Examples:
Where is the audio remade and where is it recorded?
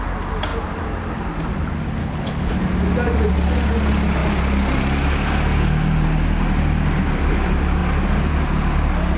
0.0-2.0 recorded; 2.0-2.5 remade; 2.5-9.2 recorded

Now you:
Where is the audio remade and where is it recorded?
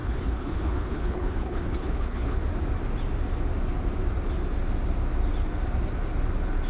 0.0-2.4 remade; 2.4-6.7 recorded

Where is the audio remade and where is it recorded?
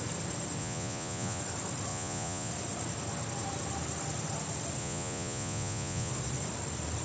0.0-0.6 recorded; 0.6-1.4 remade; 1.4-1.9 recorded; 1.9-2.5 remade; 2.5-4.8 recorded; 4.8-6.1 remade; 6.1-7.0 recorded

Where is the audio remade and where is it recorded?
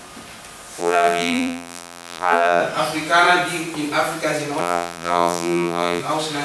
0.0-0.8 recorded; 0.8-2.6 remade; 2.6-4.6 recorded; 4.6-6.0 remade; 6.0-6.4 recorded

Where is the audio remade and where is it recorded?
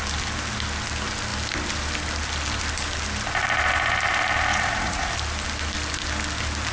0.0-4.5 recorded; 4.5-5.1 remade; 5.1-6.7 recorded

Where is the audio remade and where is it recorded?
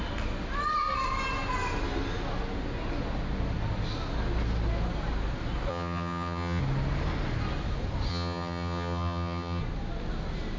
0.0-5.7 recorded; 5.7-6.6 remade; 6.6-8.1 recorded; 8.1-9.6 remade; 9.6-10.6 recorded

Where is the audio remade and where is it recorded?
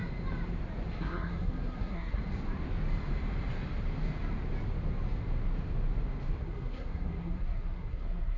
0.0-1.0 recorded; 1.0-2.2 remade; 2.2-6.4 recorded; 6.4-8.4 remade